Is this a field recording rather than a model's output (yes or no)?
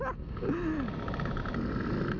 yes